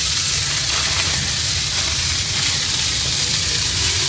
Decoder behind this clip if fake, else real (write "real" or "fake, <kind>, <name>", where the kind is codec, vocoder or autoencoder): real